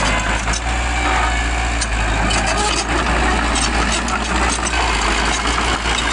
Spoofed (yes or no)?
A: no